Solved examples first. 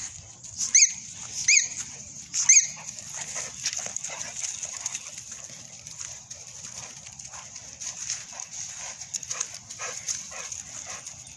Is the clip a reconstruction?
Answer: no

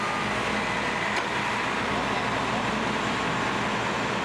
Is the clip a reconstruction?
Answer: no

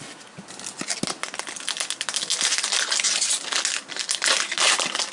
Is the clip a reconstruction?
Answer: no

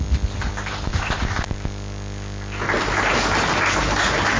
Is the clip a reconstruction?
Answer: no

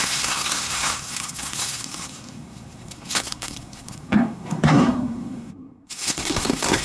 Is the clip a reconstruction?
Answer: yes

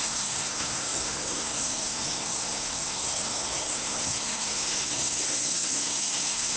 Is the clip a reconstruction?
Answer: yes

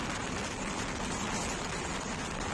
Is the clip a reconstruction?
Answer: no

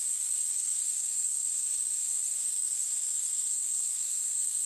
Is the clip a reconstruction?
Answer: yes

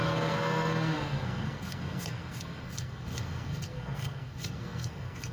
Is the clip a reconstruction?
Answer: yes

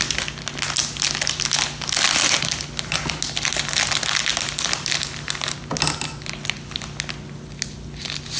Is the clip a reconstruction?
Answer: no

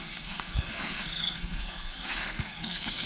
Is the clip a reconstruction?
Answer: yes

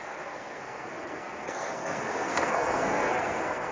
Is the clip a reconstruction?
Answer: yes